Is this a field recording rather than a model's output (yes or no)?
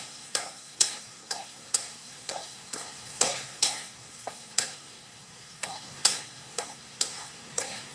no